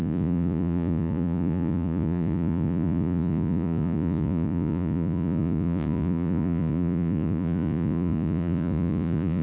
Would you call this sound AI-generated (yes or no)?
yes